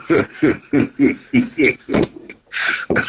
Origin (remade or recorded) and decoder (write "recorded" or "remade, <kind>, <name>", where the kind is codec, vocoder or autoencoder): remade, vocoder, Vocos